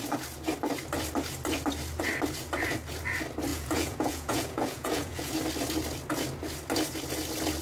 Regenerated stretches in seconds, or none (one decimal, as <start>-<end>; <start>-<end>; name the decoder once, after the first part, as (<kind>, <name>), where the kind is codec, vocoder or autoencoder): 3.5-5.3 (vocoder, Vocos)